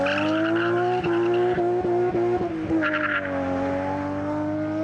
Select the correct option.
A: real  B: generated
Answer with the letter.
A